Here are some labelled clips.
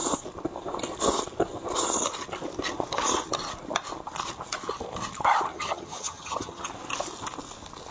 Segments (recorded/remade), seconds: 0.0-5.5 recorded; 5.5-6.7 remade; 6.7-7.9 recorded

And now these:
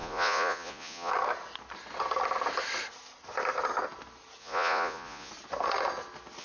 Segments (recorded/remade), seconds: 0.0-1.1 remade; 1.1-4.4 recorded; 4.4-5.3 remade; 5.3-6.4 recorded

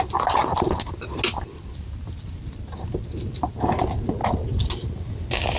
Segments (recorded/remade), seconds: 0.0-5.6 recorded

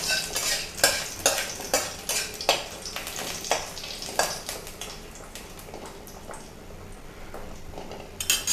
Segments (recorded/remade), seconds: 0.0-8.5 recorded